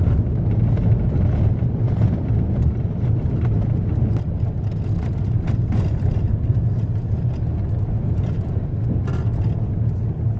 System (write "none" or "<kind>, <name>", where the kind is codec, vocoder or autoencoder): none